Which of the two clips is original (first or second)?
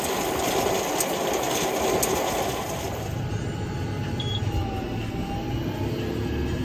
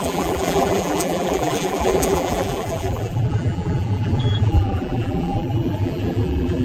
first